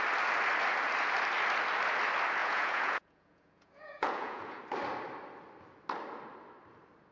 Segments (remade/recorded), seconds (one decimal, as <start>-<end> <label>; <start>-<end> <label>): 0.0-2.4 recorded; 2.4-4.6 remade; 4.6-7.1 recorded